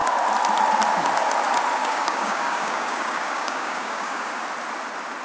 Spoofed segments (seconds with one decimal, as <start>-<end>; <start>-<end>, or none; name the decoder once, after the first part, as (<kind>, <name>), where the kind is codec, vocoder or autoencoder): 1.8-4.3 (codec, DAC)